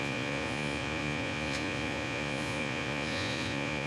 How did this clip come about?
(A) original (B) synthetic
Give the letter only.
B